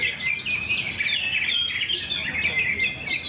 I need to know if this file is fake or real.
real